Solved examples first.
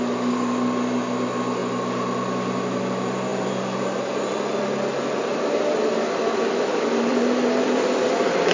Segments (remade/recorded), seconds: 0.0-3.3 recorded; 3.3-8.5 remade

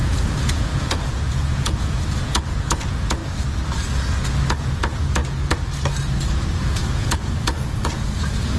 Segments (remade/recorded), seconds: 0.0-3.2 remade; 3.2-4.5 recorded; 4.5-5.2 remade; 5.2-6.6 recorded; 6.6-8.6 remade

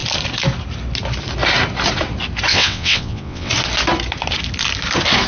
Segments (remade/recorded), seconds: 0.0-2.5 recorded; 2.5-3.5 remade; 3.5-5.3 recorded